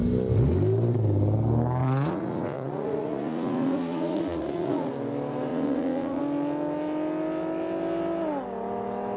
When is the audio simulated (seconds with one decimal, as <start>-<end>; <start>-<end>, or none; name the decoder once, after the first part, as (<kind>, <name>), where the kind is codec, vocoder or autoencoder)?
1.8-4.9 (vocoder, Vocos); 5.5-6.2